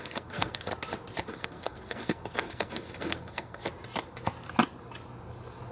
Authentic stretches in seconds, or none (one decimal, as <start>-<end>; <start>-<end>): 0.7-1.3; 3.6-5.7